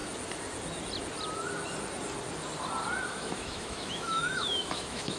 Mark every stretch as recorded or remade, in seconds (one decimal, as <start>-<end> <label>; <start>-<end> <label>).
0.0-3.1 recorded; 3.1-5.2 remade